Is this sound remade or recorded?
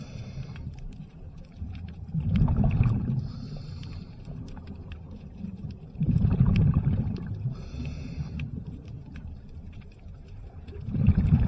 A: remade